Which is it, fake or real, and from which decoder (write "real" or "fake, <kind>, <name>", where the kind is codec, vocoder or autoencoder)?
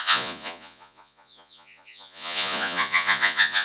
fake, vocoder, Vocos